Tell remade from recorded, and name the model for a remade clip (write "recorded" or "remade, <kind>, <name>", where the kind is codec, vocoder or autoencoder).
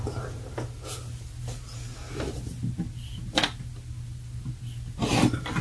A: recorded